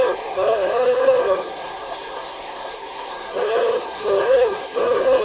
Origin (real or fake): fake